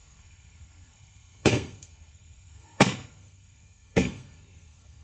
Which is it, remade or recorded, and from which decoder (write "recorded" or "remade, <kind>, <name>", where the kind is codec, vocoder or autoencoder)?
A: remade, codec, SNAC